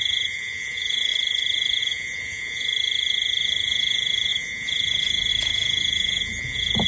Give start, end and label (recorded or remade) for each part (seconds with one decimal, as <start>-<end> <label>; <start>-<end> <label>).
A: 0.0-1.1 remade; 1.1-1.8 recorded; 1.8-2.7 remade; 2.7-3.4 recorded; 3.4-6.9 remade